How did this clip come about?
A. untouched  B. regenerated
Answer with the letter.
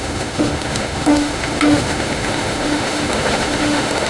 B